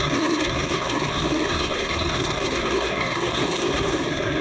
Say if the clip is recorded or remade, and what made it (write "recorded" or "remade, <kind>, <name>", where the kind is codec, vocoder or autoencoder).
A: remade, codec, SNAC